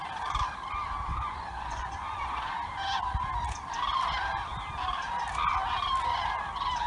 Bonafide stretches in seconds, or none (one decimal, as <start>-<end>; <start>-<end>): 0.0-1.1; 2.5-6.9